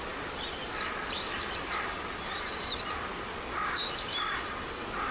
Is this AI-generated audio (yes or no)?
no